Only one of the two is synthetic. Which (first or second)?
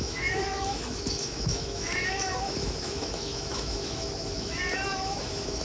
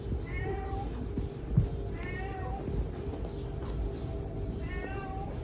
first